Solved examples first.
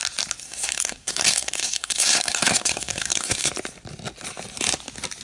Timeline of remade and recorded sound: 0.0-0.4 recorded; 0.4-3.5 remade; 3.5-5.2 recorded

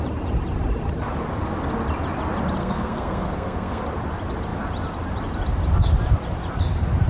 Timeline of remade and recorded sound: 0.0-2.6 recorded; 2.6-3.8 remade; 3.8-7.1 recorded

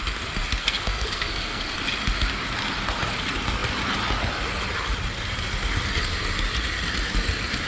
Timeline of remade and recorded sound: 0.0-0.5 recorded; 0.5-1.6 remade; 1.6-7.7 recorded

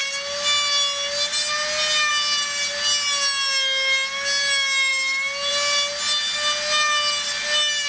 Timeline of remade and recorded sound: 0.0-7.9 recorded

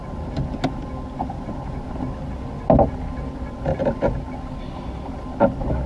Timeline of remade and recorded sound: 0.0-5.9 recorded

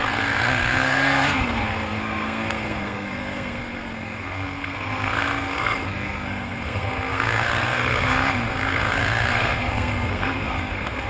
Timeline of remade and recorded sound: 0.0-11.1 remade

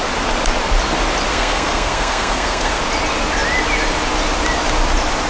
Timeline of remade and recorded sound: 0.0-1.3 recorded; 1.3-2.8 remade; 2.8-5.3 recorded

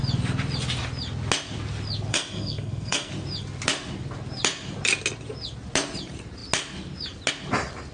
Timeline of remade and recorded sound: 0.0-2.1 recorded; 2.1-3.1 remade; 3.1-7.9 recorded